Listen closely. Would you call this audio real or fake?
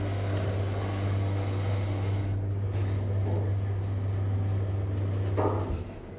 real